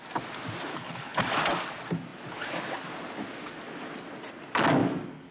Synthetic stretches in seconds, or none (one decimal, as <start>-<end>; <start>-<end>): 0.7-1.2